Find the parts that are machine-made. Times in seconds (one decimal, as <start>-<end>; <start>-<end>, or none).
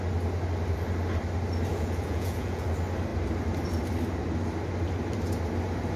1.7-2.6